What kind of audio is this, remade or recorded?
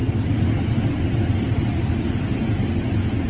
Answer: recorded